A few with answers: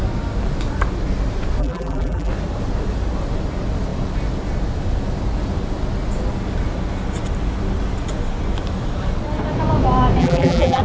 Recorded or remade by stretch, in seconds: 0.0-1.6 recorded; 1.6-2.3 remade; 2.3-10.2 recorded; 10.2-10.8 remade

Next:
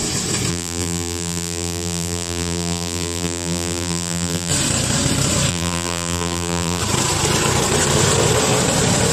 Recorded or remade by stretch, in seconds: 0.0-0.5 recorded; 0.5-4.5 remade; 4.5-5.5 recorded; 5.5-6.8 remade; 6.8-9.1 recorded

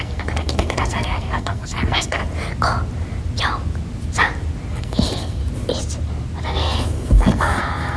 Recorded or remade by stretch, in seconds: 0.0-2.2 remade; 2.2-4.7 recorded; 4.7-5.4 remade; 5.4-6.4 recorded; 6.4-8.0 remade